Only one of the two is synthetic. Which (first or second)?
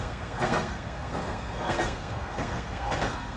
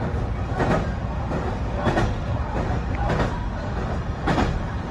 first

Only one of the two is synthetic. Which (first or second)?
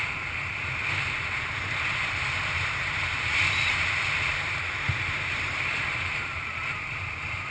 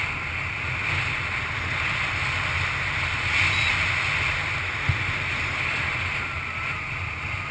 first